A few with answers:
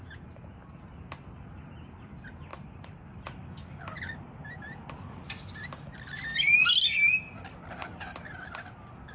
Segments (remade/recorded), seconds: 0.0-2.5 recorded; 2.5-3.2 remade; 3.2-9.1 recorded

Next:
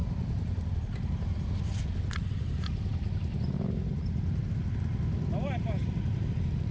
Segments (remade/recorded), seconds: 0.0-6.7 recorded